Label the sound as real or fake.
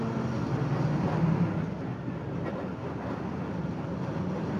real